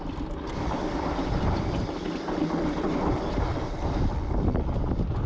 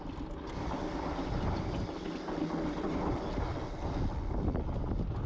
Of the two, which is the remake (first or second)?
first